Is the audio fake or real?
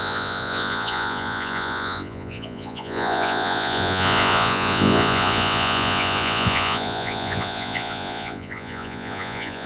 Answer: fake